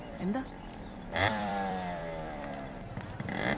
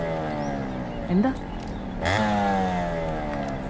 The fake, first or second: first